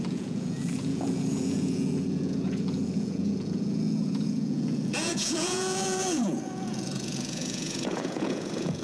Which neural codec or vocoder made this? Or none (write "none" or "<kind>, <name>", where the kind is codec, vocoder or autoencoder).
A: vocoder, Vocos